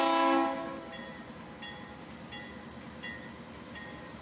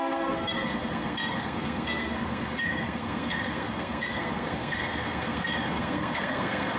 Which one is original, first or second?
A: first